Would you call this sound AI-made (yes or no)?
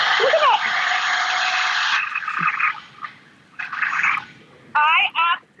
no